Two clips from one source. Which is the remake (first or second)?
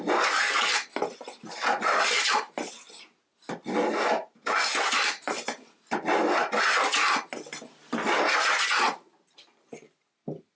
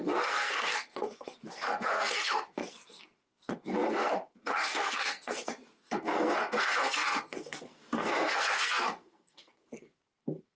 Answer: second